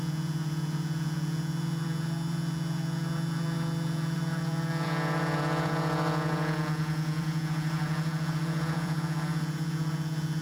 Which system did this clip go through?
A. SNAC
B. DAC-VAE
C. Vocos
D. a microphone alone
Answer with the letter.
C